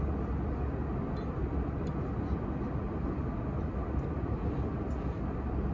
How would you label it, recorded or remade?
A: recorded